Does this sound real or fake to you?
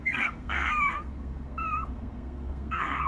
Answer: fake